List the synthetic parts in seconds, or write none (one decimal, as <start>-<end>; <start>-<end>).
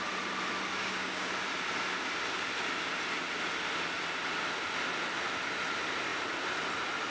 0.8-1.3